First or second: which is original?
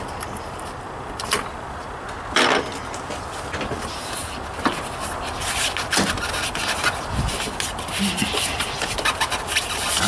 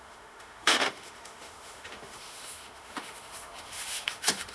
first